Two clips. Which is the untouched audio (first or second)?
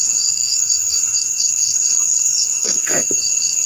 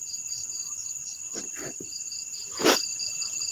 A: second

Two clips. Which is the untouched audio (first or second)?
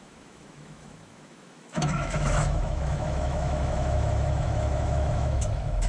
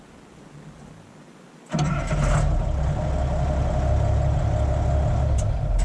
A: second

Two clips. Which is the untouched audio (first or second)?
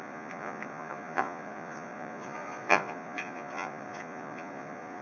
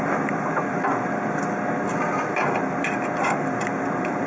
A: second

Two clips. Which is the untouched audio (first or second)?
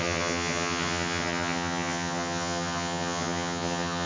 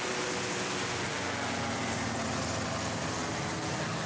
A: second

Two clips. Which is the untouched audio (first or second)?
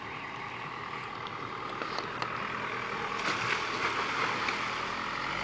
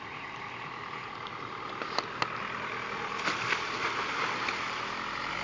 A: first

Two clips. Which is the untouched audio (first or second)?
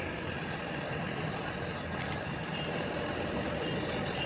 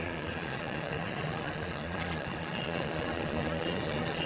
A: first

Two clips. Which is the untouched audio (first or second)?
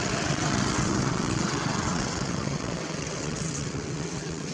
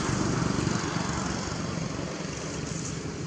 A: second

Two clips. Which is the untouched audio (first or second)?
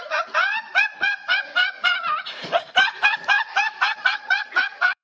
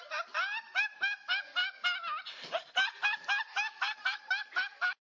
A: second